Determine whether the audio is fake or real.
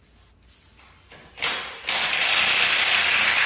real